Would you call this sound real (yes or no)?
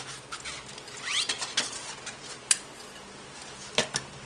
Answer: yes